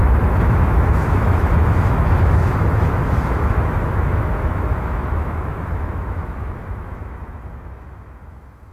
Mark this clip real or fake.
fake